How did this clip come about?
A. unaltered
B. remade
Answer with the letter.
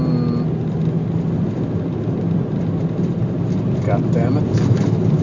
A